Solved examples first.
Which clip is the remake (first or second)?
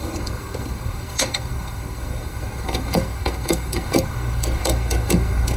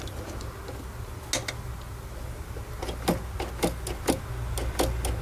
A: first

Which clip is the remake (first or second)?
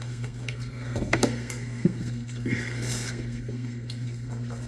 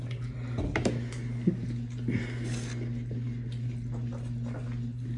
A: first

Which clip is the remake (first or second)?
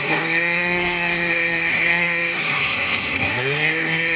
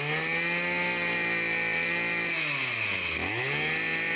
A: first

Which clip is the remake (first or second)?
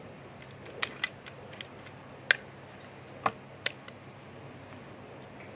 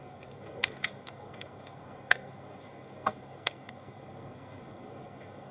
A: second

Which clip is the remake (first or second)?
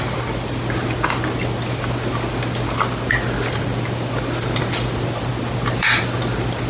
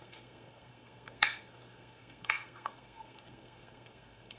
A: second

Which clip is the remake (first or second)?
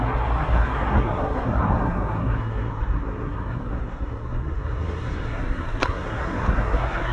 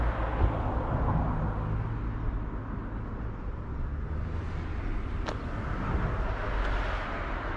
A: first